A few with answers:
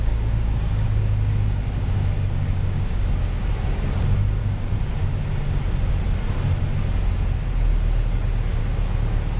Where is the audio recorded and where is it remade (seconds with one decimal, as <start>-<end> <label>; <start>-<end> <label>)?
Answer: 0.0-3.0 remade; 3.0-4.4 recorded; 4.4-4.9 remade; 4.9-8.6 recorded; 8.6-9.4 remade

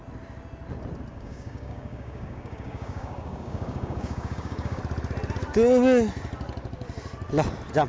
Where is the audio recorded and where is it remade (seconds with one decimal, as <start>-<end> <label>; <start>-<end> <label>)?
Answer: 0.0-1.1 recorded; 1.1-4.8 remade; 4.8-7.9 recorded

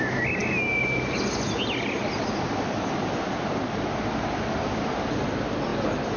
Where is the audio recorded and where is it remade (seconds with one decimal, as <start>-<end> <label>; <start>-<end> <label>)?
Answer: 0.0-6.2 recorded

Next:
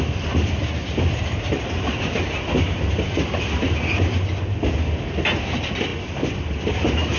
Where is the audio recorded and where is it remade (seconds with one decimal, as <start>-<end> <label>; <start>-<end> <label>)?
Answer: 0.0-7.2 recorded

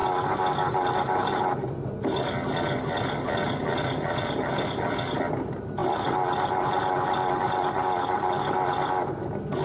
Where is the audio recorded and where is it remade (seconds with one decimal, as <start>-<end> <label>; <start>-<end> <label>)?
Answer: 0.0-9.6 recorded